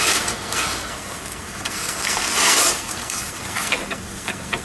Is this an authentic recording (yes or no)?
no